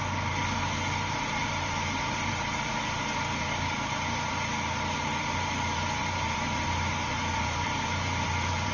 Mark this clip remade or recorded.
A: remade